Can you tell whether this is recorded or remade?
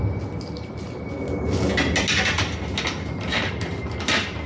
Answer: recorded